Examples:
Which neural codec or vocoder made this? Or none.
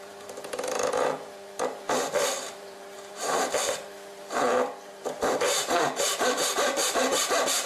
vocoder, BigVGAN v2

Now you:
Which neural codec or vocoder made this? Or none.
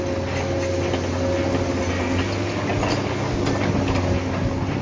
none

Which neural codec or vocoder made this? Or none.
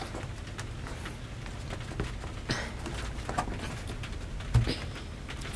none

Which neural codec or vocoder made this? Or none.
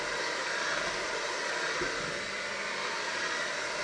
none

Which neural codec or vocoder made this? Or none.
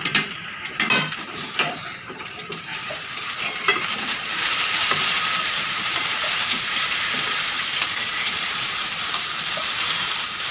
vocoder, BigVGAN v2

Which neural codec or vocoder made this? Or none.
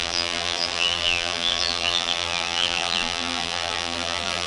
vocoder, BigVGAN v2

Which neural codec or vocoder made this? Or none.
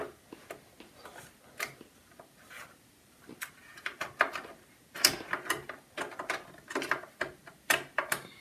none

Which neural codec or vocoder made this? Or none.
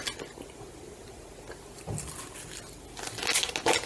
none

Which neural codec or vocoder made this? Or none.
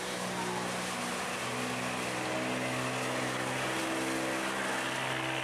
none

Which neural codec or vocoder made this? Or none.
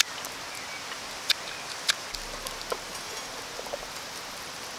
none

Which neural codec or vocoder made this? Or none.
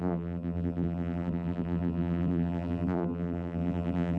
vocoder, BigVGAN v2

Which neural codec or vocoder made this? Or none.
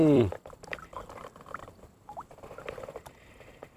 vocoder, BigVGAN v2